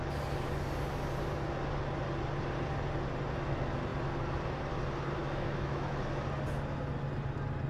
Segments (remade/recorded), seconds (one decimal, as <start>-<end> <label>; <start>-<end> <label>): 0.0-5.2 recorded; 5.2-6.0 remade; 6.0-7.7 recorded